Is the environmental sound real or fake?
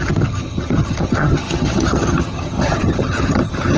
fake